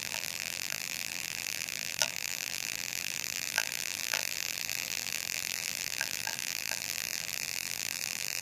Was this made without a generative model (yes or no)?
no